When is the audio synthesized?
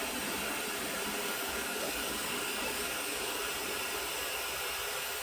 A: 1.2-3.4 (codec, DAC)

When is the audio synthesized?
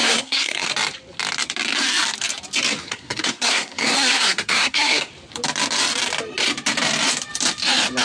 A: 0.0-0.7 (codec, SNAC); 2.8-5.1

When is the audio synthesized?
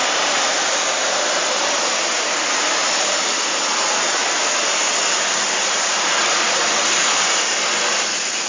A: 0.0-3.2 (vocoder, BigVGAN v2)